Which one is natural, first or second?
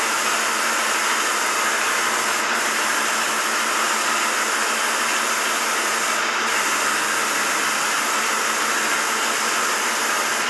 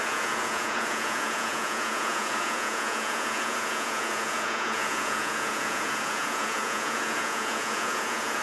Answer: first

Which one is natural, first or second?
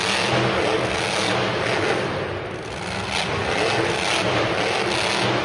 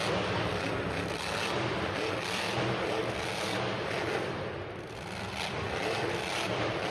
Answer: first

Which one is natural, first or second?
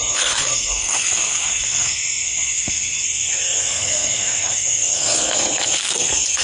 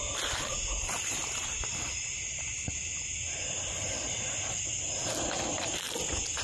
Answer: second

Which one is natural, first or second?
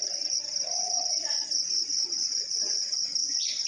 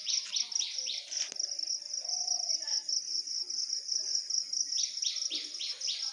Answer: second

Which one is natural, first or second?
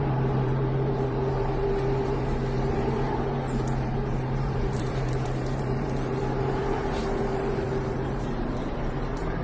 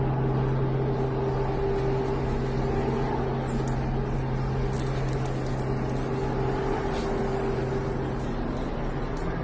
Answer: second